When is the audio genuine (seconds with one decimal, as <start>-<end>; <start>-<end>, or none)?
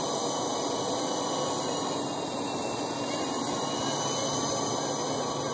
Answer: 0.0-5.5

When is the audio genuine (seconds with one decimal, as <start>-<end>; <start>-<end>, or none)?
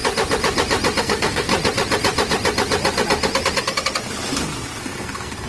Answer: 0.0-1.0; 1.5-4.8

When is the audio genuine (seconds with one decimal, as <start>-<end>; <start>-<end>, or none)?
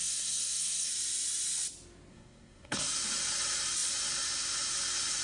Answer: 0.9-2.1; 2.8-5.2